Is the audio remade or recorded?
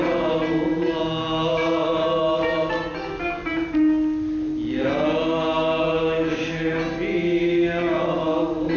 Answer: recorded